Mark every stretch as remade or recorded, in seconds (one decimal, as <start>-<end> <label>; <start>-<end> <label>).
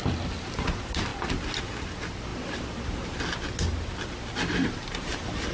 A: 0.0-5.5 recorded